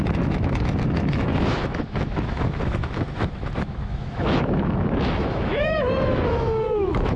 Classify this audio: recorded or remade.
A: remade